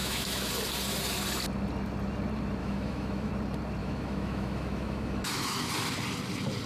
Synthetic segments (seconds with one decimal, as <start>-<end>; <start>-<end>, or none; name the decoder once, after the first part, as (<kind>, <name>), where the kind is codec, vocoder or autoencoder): 0.0-0.5 (autoencoder, DAC-VAE); 2.6-3.3; 3.8-5.7